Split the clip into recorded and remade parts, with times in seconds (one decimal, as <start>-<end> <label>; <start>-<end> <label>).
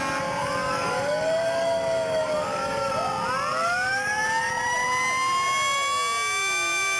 0.0-0.4 recorded; 0.4-2.9 remade; 2.9-3.5 recorded; 3.5-4.5 remade; 4.5-7.0 recorded